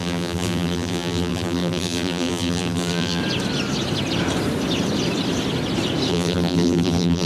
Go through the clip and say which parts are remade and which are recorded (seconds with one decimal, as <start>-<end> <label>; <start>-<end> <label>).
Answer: 0.0-3.2 remade; 3.2-6.1 recorded; 6.1-7.3 remade